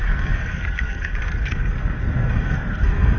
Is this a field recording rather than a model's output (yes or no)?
no